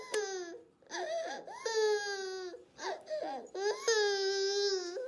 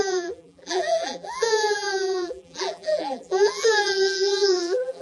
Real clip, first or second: first